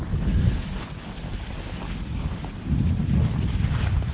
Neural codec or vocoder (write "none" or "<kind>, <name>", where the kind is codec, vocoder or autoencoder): none